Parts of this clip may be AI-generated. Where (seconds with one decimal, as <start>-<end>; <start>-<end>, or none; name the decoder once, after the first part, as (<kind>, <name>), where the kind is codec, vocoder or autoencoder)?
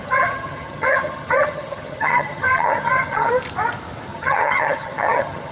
0.0-3.3 (vocoder, HiFi-GAN); 4.1-5.5